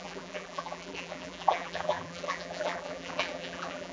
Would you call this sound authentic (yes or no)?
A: no